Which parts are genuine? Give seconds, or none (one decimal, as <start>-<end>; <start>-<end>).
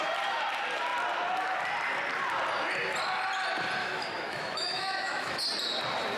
0.0-3.8; 5.4-6.2